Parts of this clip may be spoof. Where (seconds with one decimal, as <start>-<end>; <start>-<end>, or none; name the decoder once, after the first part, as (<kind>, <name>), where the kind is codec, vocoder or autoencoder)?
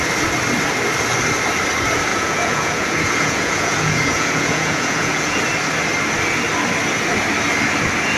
2.1-5.4 (vocoder, Vocos)